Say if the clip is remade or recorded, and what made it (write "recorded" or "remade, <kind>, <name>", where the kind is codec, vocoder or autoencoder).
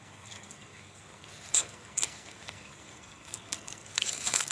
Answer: remade, codec, SNAC